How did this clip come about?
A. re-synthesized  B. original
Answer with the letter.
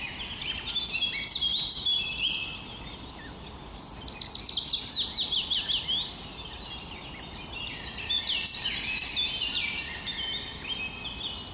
B